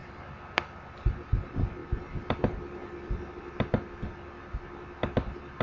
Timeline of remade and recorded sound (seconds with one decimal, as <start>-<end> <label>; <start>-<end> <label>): 0.0-5.6 recorded

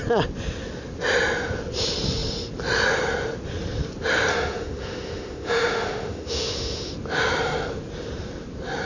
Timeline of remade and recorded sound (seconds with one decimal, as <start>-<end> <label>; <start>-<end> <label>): 0.0-4.3 recorded; 4.3-6.9 remade; 6.9-8.8 recorded

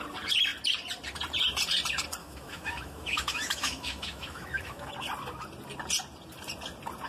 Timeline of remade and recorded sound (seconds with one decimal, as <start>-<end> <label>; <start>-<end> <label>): 0.0-2.2 recorded; 2.2-4.9 remade; 4.9-7.1 recorded

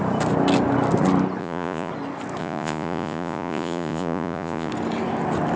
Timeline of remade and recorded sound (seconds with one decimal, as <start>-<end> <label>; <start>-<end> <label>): 0.0-1.4 recorded; 1.4-1.9 remade; 1.9-2.4 recorded; 2.4-4.7 remade; 4.7-5.6 recorded

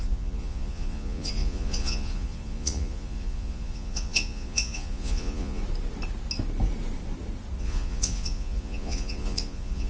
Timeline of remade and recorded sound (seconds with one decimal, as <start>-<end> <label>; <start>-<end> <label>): 0.0-5.6 remade; 5.6-7.6 recorded; 7.6-9.9 remade

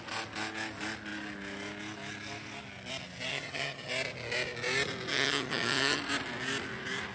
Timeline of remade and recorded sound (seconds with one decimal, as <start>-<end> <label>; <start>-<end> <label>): 0.0-3.3 recorded; 3.3-3.9 remade; 3.9-5.1 recorded; 5.1-6.0 remade; 6.0-7.1 recorded

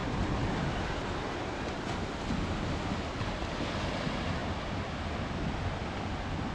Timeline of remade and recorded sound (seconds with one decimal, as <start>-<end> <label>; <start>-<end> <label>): 0.0-6.5 recorded